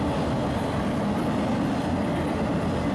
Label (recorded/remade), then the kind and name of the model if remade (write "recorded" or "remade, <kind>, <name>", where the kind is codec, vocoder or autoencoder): recorded